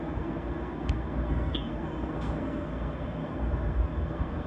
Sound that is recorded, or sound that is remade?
remade